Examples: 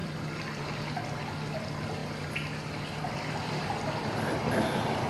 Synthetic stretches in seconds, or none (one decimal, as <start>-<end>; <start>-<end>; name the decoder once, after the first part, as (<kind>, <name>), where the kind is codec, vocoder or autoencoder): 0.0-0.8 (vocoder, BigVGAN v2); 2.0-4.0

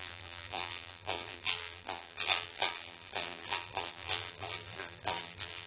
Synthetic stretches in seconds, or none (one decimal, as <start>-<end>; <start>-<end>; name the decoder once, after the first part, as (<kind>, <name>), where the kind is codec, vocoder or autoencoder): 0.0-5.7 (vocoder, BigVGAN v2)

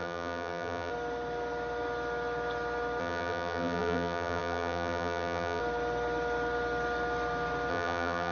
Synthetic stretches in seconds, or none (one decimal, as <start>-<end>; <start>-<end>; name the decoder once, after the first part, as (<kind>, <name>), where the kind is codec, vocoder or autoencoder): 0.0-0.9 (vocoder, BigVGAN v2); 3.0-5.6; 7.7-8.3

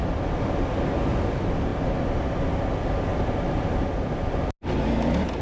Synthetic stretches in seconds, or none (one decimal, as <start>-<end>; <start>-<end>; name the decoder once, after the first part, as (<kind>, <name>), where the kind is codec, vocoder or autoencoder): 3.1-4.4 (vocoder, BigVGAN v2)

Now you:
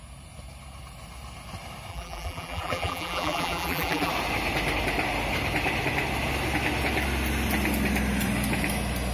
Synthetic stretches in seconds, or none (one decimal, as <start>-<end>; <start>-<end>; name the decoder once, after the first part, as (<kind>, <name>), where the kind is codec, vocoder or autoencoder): 1.9-4.1 (vocoder, BigVGAN v2)

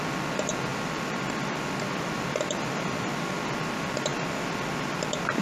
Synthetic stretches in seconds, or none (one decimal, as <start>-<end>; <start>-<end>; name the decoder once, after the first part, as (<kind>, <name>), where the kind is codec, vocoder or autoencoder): 0.7-3.5 (vocoder, BigVGAN v2); 4.1-5.4